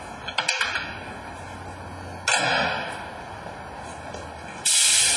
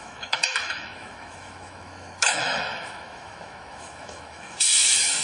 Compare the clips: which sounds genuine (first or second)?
first